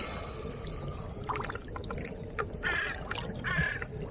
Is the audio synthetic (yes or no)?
no